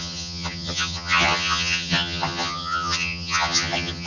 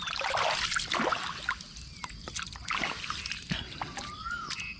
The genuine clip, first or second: second